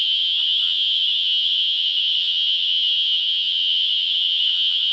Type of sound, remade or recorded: remade